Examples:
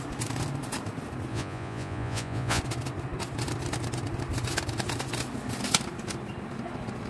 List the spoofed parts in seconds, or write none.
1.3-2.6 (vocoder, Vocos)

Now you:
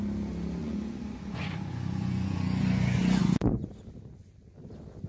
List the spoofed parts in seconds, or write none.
0.6-3.7 (vocoder, Vocos)

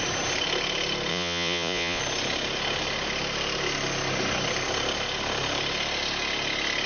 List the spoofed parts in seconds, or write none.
1.1-2.0 (vocoder, Vocos)

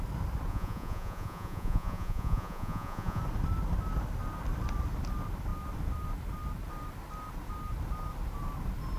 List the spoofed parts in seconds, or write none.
0.5-3.2 (vocoder, Vocos)